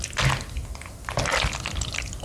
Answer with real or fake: real